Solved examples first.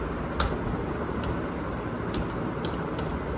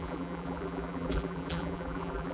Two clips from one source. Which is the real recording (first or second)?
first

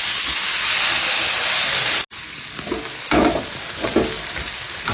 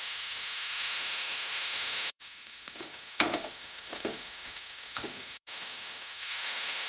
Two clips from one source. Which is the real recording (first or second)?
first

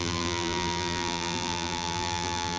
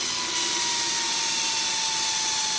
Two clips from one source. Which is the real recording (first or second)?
second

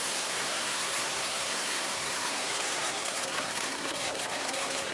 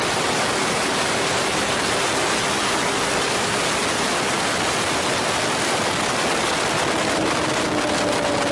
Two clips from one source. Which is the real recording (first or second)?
second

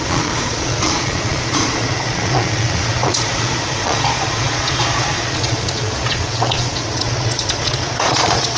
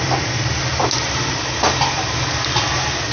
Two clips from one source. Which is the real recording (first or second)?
second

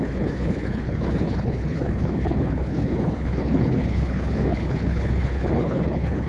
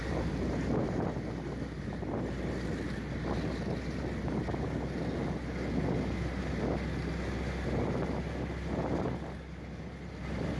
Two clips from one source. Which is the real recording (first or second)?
second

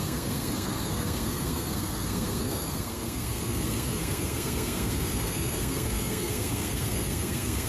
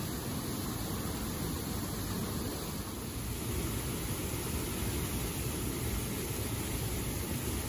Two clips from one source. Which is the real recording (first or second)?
second